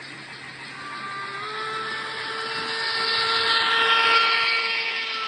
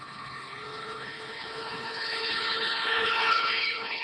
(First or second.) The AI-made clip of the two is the second